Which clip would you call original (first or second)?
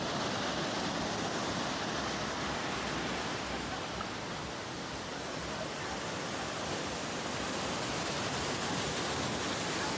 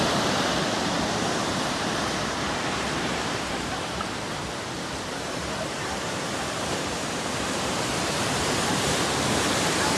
first